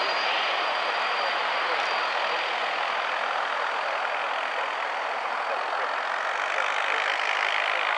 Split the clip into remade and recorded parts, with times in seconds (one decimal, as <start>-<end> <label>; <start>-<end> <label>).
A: 0.0-2.6 recorded; 2.6-4.5 remade; 4.5-8.0 recorded